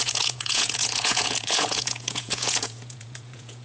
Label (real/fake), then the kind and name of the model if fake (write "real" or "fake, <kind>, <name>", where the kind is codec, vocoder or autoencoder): fake, vocoder, Vocos